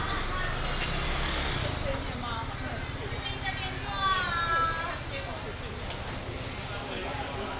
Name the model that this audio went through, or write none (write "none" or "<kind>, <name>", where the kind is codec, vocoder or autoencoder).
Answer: none